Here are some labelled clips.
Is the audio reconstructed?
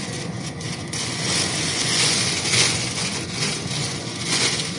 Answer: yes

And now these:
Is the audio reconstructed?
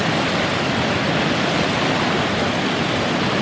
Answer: no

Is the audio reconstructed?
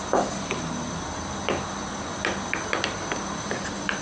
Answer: no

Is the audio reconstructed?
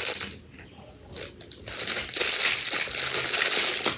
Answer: no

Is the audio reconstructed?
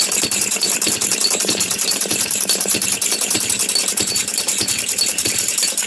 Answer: yes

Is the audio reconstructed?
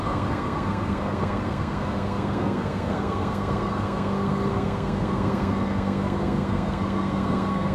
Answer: yes